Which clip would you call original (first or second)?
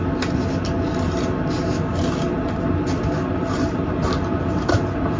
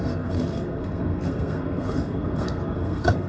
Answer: first